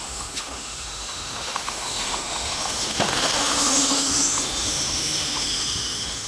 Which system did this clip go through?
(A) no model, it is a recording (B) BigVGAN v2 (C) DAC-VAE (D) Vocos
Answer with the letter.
C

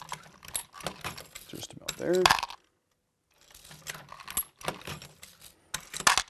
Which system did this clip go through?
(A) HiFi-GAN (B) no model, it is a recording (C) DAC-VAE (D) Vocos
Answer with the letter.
B